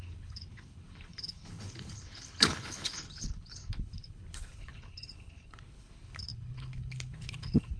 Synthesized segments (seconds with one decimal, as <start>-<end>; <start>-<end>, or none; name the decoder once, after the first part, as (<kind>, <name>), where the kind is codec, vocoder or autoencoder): 0.0-7.8 (codec, HILCodec)